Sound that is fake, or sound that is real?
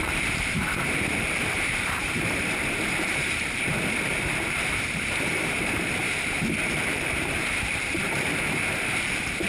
fake